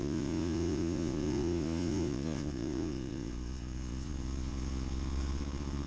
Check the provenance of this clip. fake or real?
fake